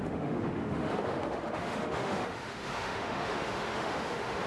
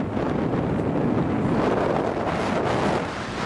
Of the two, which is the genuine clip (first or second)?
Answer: second